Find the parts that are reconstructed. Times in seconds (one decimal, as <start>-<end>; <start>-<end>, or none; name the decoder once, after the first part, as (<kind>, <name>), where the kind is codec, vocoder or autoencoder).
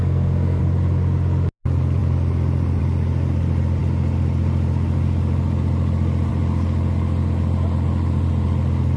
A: 0.0-0.6 (codec, SNAC)